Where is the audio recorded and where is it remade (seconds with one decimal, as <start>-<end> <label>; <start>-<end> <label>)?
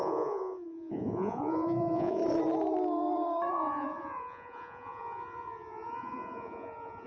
0.0-2.2 remade; 2.2-3.5 recorded; 3.5-7.1 remade